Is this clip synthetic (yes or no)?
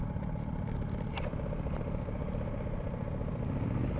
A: no